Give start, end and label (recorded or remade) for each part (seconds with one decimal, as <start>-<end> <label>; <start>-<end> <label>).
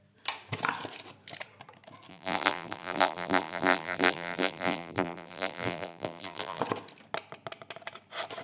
0.0-2.1 recorded; 2.1-6.6 remade; 6.6-8.4 recorded